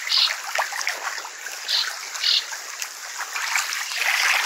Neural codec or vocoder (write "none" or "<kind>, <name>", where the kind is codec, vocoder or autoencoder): none